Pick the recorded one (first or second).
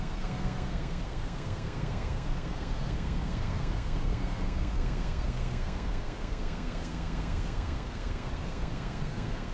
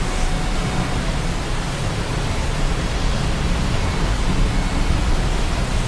second